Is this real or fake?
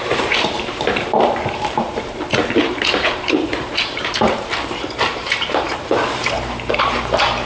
fake